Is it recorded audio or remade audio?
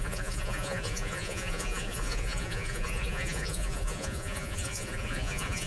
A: remade